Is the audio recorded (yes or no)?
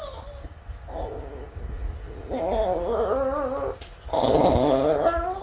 yes